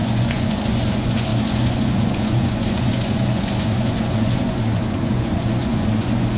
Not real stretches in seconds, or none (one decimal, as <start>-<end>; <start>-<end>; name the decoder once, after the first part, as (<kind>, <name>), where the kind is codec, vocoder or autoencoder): 0.0-6.4 (vocoder, Vocos)